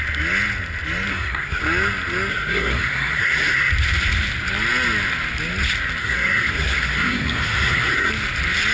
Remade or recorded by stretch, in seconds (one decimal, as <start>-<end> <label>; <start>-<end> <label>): 0.0-1.1 recorded; 1.1-1.6 remade; 1.6-2.3 recorded; 2.3-3.7 remade; 3.7-6.0 recorded; 6.0-8.1 remade; 8.1-8.7 recorded